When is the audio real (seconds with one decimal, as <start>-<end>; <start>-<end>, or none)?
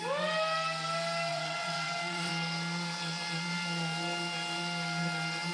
0.0-1.3; 2.3-5.5